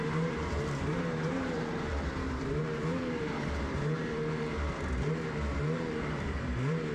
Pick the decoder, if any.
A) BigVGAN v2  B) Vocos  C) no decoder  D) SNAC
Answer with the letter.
A